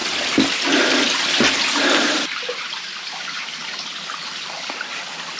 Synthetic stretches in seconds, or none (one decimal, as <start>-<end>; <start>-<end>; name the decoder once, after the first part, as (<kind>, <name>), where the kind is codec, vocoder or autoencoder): 0.0-2.9 (vocoder, BigVGAN v2); 3.9-4.9